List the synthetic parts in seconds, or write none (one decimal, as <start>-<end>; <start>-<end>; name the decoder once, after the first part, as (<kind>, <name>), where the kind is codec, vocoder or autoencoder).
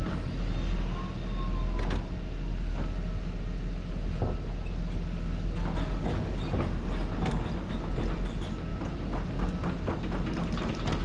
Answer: 8.7-11.0 (vocoder, BigVGAN v2)